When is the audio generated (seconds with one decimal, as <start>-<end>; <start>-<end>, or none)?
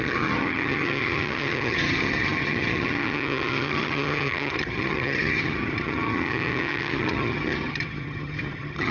0.0-8.9